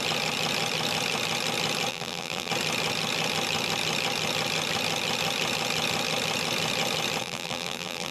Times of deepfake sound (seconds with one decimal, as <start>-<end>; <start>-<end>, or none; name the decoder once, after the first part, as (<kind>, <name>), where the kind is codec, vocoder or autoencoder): 1.9-2.5 (vocoder, BigVGAN v2); 7.2-8.1